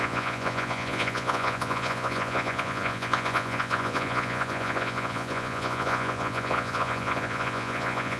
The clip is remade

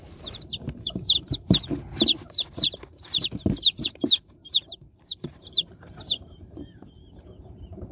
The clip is remade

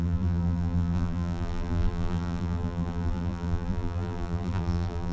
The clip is remade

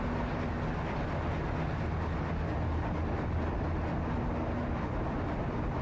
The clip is recorded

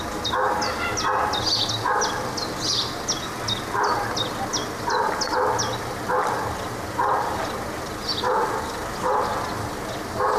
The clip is recorded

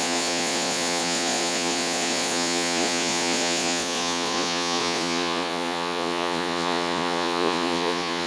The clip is remade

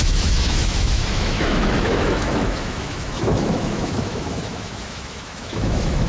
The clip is remade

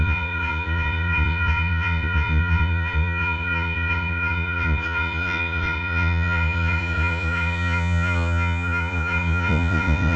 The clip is remade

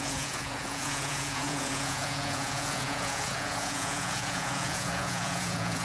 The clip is remade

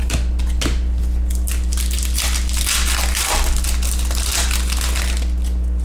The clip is recorded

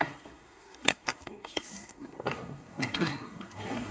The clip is remade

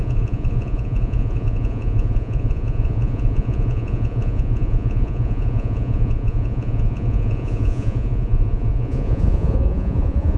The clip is remade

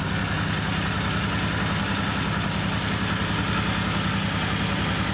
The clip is recorded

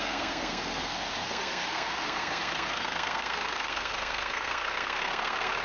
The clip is remade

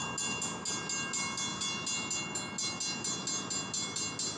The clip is recorded